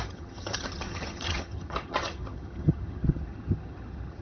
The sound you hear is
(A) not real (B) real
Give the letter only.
A